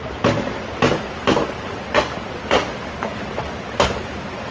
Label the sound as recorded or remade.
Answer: recorded